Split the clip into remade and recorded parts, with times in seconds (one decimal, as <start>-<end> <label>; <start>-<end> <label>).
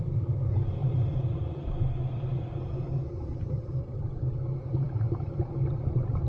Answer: 0.0-6.3 remade